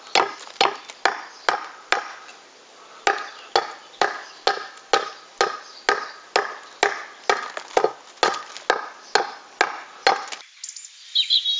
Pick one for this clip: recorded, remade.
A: recorded